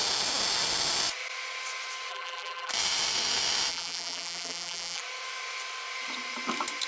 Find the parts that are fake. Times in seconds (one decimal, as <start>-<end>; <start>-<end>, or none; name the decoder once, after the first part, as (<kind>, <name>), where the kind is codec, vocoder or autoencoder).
2.1-2.7 (vocoder, BigVGAN v2); 3.7-5.0